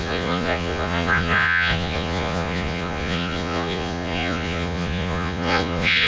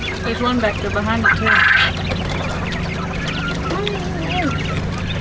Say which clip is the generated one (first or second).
first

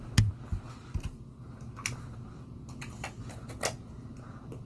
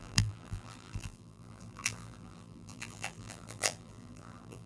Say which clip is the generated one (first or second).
second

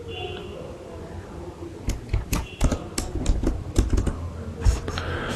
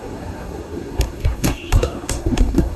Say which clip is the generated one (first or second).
second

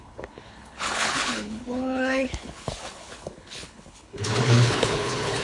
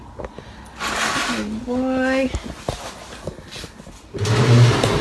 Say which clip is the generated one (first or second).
first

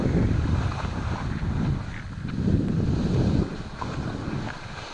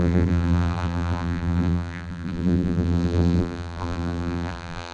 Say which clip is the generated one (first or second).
second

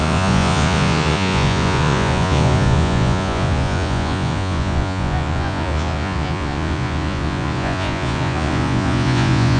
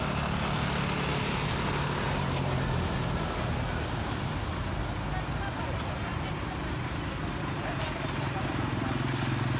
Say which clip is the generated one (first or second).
first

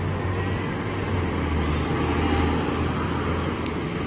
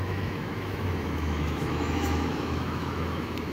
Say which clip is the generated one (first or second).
second